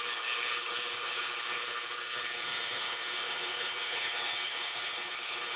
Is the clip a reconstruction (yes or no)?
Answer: yes